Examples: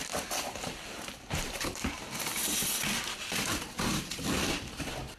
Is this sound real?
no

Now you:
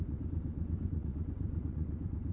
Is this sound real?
no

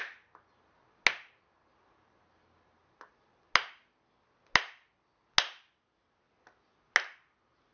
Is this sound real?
yes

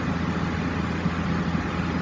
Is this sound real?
yes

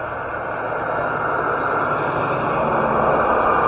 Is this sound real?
yes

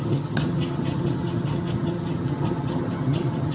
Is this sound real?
no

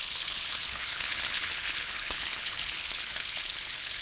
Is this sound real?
no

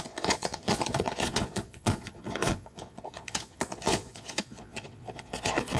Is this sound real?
no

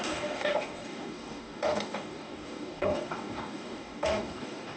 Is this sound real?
no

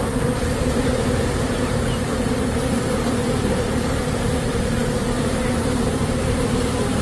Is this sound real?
no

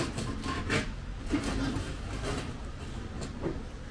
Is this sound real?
yes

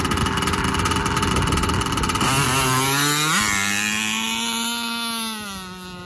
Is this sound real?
yes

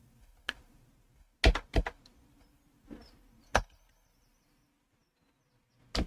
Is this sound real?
yes